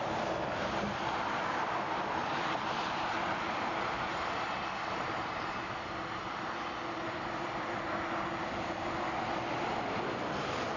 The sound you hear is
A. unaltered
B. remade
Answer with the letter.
A